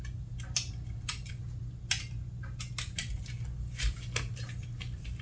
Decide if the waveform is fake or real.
real